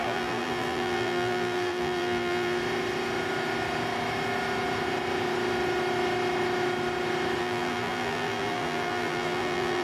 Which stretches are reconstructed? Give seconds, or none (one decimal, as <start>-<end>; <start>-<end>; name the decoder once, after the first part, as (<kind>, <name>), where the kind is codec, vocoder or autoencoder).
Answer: 0.0-2.6 (vocoder, BigVGAN v2); 7.4-9.8